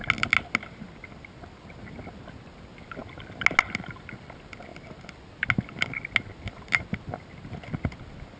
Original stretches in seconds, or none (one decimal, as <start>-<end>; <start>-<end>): 0.0-8.4